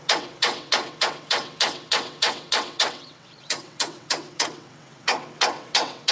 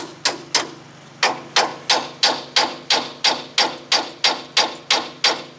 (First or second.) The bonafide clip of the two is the second